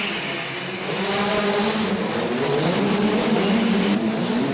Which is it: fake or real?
real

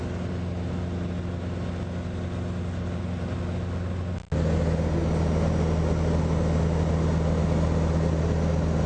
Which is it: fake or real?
real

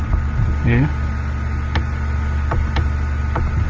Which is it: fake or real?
real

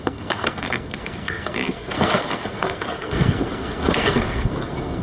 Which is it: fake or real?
fake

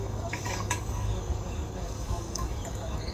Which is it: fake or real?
fake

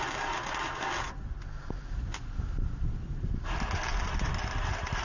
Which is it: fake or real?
real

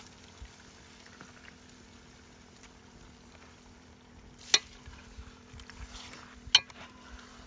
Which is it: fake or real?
real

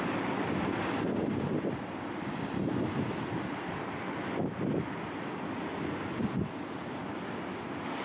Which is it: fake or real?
real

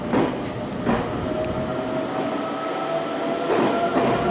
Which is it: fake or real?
real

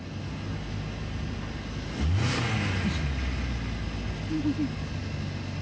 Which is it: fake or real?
real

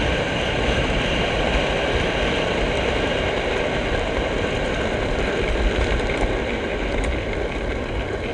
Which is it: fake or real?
real